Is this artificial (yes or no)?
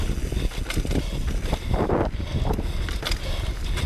no